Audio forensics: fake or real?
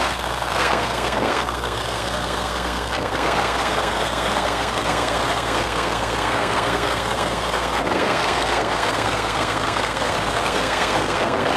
fake